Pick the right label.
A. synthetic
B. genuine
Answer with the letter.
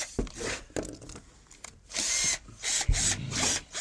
B